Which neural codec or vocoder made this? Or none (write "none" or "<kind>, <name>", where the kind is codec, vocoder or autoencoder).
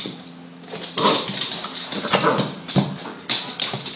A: none